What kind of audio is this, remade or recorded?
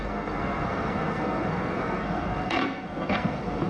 remade